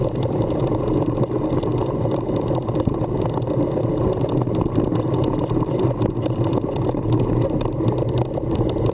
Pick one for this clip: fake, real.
real